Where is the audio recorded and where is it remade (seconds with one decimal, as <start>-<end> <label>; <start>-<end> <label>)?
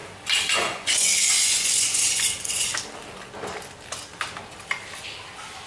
0.0-0.5 recorded; 0.5-2.7 remade; 2.7-5.7 recorded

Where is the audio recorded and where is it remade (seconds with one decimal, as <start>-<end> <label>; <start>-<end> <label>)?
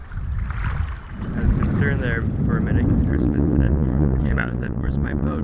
0.0-3.1 recorded; 3.1-5.4 remade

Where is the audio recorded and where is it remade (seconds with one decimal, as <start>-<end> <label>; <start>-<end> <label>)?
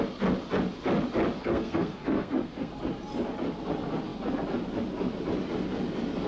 0.0-1.4 recorded; 1.4-2.7 remade; 2.7-6.3 recorded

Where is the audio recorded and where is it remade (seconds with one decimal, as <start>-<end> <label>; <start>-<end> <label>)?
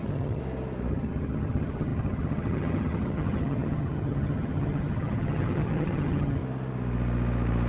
0.0-0.4 remade; 0.4-0.9 recorded; 0.9-6.4 remade; 6.4-7.7 recorded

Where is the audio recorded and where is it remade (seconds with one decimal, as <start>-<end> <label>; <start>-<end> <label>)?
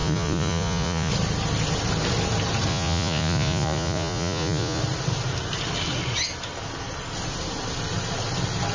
0.0-1.1 remade; 1.1-2.7 recorded; 2.7-4.8 remade; 4.8-8.7 recorded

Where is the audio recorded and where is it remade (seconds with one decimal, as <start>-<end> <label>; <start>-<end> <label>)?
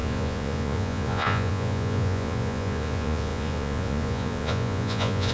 0.0-5.3 remade